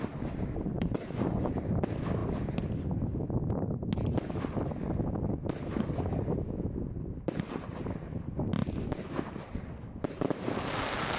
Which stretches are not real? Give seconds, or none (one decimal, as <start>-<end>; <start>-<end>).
0.7-1.5